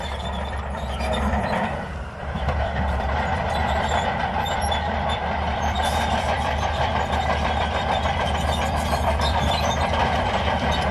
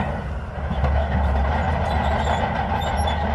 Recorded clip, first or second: second